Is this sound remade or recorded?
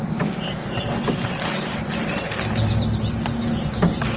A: recorded